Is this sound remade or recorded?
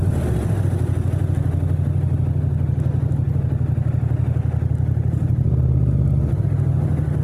recorded